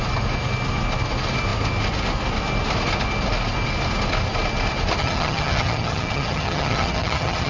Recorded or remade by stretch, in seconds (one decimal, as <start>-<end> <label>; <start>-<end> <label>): 0.0-5.0 recorded; 5.0-7.5 remade